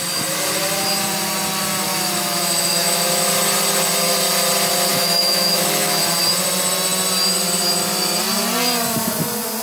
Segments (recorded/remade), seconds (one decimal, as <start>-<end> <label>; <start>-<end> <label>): 0.0-1.9 recorded; 1.9-3.2 remade; 3.2-4.9 recorded; 4.9-6.0 remade; 6.0-9.6 recorded